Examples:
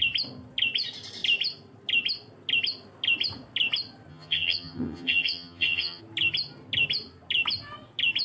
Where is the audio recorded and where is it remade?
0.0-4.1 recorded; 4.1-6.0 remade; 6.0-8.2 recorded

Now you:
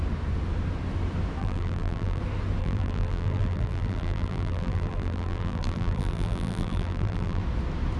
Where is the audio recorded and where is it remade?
0.0-1.4 recorded; 1.4-2.2 remade; 2.2-2.6 recorded; 2.6-7.4 remade; 7.4-8.0 recorded

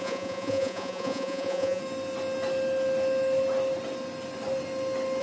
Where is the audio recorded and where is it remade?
0.0-1.8 remade; 1.8-5.2 recorded

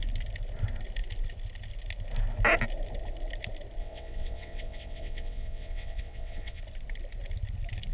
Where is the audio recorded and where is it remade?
0.0-3.8 recorded; 3.8-6.6 remade; 6.6-7.9 recorded

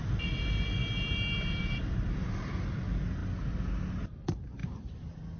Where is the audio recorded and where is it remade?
0.0-0.8 remade; 0.8-1.6 recorded; 1.6-3.2 remade; 3.2-4.0 recorded; 4.0-5.4 remade

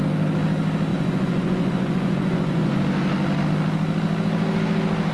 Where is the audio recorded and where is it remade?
0.0-0.9 recorded; 0.9-2.8 remade; 2.8-5.1 recorded